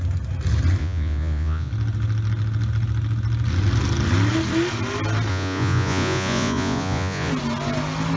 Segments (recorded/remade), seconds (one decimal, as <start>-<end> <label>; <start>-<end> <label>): 0.0-0.8 recorded; 0.8-1.7 remade; 1.7-5.3 recorded; 5.3-7.3 remade; 7.3-8.2 recorded